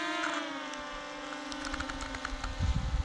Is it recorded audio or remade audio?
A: recorded